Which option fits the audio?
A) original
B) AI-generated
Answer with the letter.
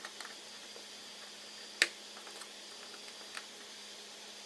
A